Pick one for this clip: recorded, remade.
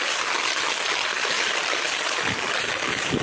recorded